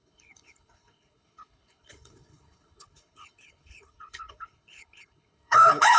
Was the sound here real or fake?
fake